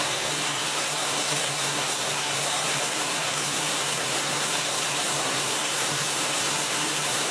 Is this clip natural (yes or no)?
no